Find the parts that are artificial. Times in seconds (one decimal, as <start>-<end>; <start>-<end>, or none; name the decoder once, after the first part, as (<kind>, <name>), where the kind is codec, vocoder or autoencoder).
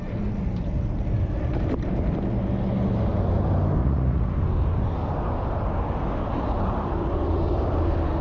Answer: 3.8-4.3 (vocoder, Vocos)